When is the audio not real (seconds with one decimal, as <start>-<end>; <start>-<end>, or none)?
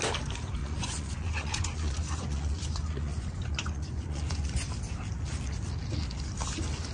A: 0.6-4.7